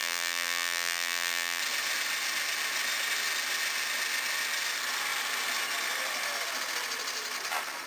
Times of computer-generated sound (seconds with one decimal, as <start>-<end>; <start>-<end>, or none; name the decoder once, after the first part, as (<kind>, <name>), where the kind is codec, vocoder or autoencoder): 0.0-1.6 (vocoder, BigVGAN v2)